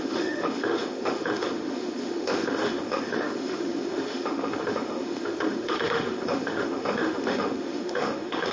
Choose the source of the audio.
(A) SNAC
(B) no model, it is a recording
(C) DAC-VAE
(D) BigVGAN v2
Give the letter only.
C